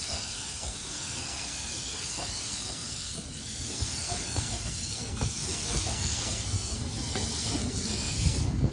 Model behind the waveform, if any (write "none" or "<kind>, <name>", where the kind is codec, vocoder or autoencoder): codec, SNAC